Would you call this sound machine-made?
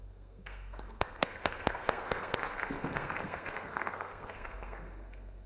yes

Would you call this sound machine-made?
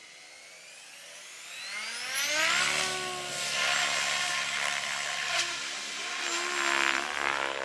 no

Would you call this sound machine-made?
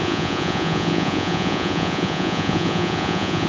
yes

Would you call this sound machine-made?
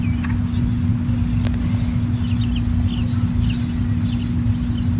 no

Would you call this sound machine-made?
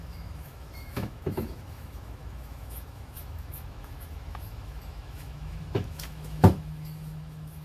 yes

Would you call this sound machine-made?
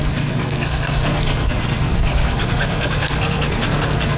yes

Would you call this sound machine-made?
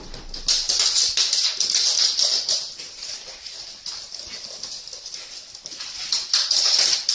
no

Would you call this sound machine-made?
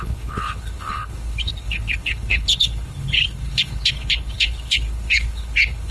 yes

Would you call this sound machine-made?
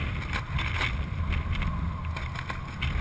no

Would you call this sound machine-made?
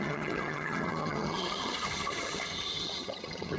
yes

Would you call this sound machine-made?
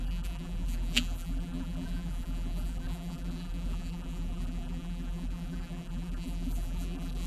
yes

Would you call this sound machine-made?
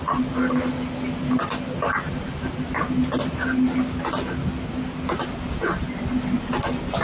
no